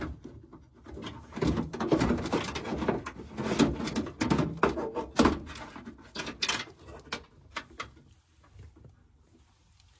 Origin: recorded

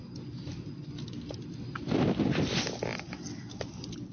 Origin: recorded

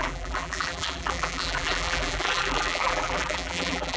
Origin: remade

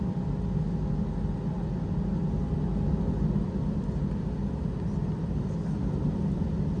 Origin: recorded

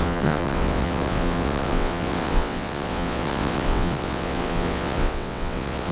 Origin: remade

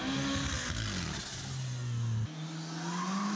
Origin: recorded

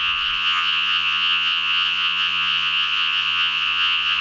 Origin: remade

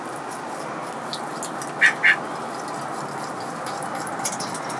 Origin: recorded